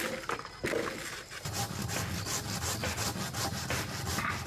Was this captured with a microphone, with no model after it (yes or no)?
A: yes